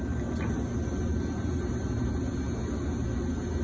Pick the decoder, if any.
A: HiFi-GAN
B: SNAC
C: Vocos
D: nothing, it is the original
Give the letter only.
D